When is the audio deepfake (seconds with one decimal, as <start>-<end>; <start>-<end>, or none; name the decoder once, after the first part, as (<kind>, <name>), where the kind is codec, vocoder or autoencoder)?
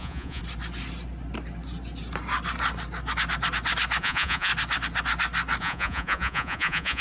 0.0-0.4 (vocoder, Vocos); 4.0-4.5; 5.6-7.0